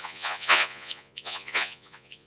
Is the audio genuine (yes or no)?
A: no